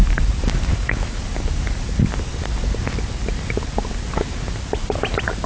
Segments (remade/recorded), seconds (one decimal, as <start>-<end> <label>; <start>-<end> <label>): 0.0-0.7 recorded; 0.7-1.2 remade; 1.2-5.5 recorded